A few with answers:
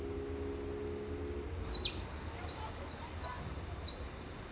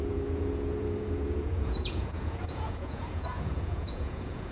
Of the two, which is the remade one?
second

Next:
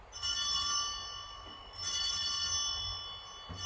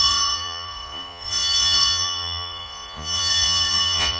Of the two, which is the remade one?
second